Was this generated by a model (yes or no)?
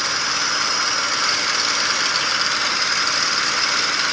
no